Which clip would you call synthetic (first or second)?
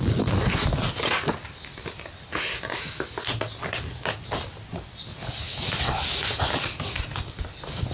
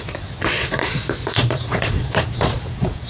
second